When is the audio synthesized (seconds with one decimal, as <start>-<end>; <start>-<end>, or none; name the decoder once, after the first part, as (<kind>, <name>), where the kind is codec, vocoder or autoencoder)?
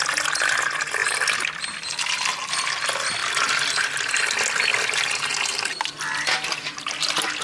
none